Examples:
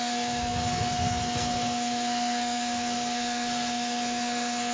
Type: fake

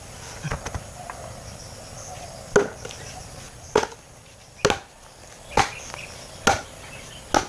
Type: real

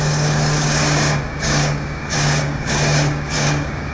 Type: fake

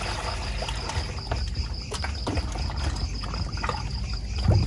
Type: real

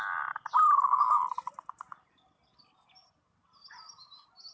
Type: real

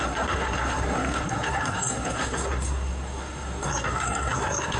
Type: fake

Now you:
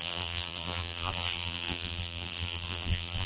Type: fake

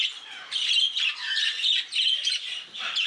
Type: fake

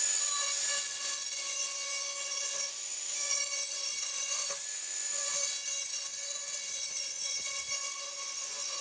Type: fake